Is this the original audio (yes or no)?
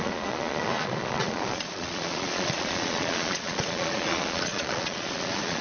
no